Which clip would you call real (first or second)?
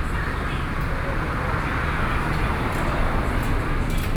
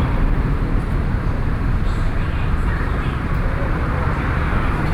first